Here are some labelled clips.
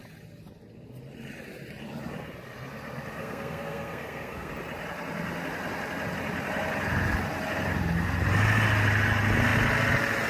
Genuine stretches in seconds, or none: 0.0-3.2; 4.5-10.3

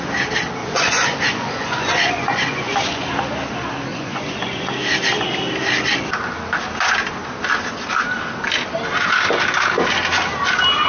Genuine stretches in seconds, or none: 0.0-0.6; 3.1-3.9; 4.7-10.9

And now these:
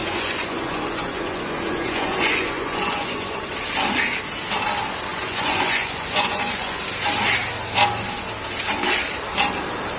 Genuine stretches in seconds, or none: 3.4-5.1; 6.8-10.0